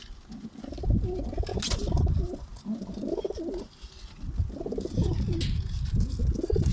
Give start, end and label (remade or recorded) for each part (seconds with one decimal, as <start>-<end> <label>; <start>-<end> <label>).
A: 0.0-6.7 recorded